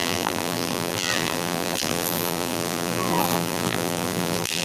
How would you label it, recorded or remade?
remade